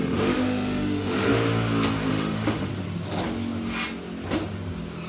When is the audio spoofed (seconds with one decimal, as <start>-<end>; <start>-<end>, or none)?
0.0-1.3; 2.1-2.7